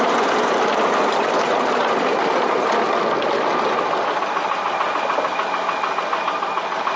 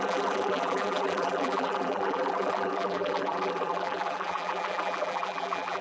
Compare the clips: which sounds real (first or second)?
first